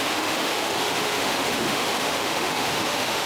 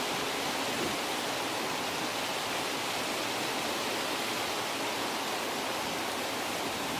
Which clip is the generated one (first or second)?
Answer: first